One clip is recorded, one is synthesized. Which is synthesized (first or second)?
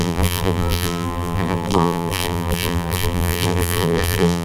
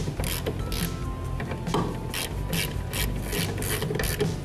first